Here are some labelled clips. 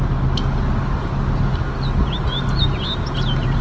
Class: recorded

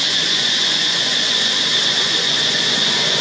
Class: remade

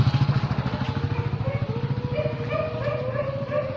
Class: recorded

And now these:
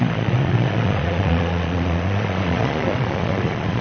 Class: remade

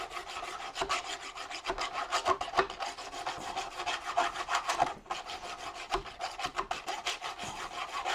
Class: recorded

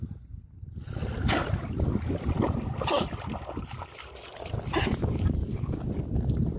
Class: recorded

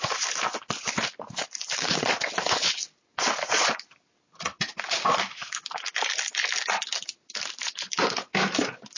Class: recorded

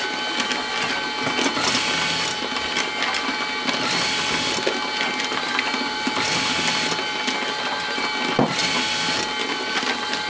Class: recorded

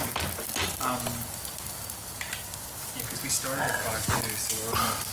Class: recorded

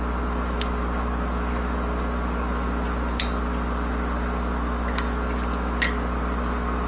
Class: recorded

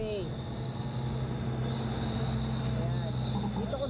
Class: recorded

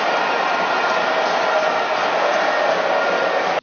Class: recorded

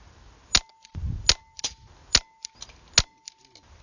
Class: recorded